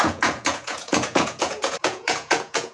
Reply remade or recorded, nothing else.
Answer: remade